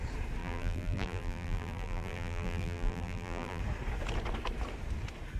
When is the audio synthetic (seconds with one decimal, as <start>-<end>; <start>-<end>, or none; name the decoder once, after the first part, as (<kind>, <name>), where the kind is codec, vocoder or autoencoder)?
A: 0.4-3.6 (vocoder, BigVGAN v2)